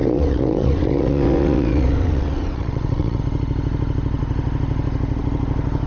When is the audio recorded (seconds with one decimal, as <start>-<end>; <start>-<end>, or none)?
3.2-5.9